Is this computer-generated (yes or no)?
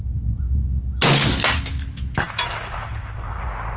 no